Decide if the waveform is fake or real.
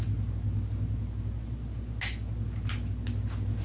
real